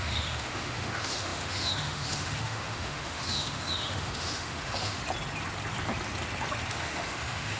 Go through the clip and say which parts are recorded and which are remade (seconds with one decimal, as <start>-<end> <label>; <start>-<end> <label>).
0.0-5.0 remade; 5.0-6.7 recorded; 6.7-7.6 remade